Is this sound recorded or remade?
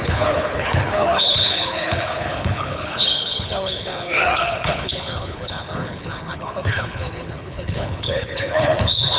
remade